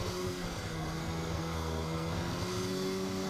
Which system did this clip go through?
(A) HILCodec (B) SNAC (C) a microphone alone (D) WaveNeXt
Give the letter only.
B